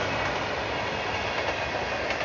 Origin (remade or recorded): recorded